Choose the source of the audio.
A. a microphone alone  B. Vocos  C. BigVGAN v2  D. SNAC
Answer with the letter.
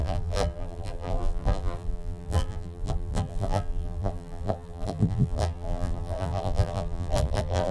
C